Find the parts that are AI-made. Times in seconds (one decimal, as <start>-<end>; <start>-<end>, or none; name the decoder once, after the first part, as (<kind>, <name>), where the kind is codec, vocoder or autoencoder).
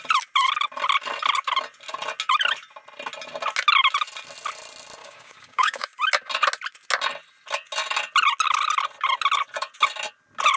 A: 5.0-6.0 (codec, DAC)